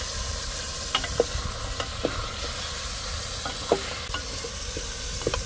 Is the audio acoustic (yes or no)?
yes